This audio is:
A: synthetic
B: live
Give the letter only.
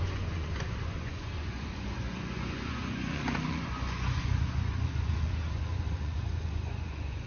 A